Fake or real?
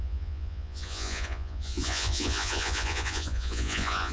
fake